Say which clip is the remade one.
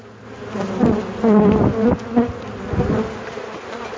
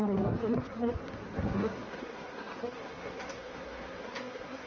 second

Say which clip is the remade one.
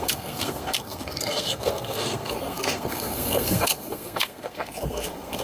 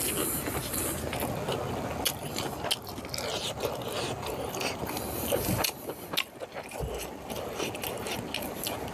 first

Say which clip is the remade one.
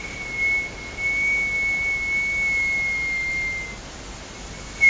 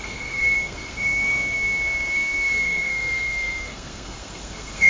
second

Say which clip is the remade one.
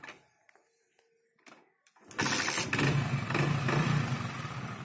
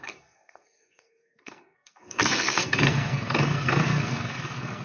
second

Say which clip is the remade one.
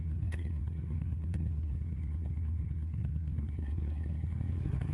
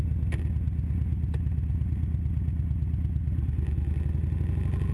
first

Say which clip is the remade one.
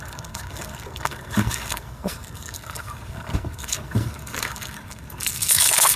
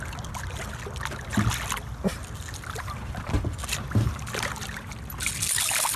first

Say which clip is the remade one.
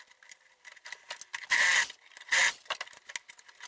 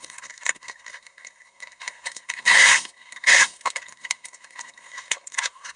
second